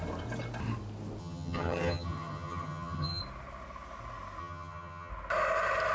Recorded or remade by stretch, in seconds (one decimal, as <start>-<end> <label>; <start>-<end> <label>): 0.0-1.2 recorded; 1.2-3.2 remade; 3.2-4.4 recorded; 4.4-5.1 remade; 5.1-5.9 recorded